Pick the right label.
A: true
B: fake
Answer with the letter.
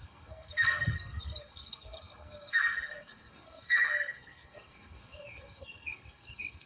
B